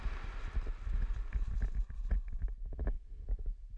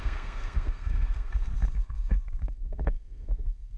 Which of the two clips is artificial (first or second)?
second